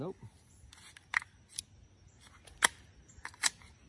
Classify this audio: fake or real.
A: real